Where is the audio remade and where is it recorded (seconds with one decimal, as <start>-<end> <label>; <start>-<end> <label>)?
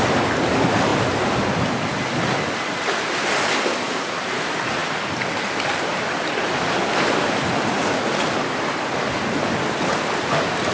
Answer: 0.0-10.7 recorded